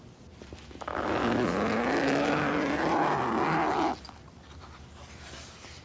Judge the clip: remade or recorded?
recorded